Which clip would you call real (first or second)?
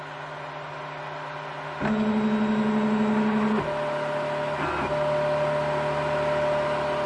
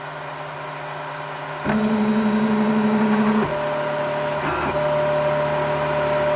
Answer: first